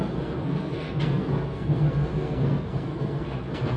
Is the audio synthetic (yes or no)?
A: yes